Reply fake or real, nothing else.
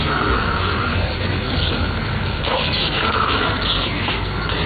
fake